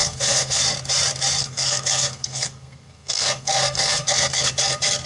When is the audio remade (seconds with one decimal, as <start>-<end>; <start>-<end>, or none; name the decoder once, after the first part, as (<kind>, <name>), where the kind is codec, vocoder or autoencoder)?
0.0-0.6 (codec, SNAC); 1.4-4.5